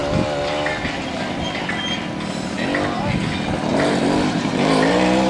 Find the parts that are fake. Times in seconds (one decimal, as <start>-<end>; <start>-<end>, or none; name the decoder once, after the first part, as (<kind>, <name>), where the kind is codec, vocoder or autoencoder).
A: 3.7-5.3 (vocoder, BigVGAN v2)